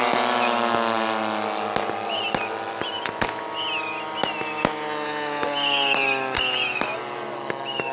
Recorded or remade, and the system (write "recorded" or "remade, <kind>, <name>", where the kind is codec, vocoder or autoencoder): recorded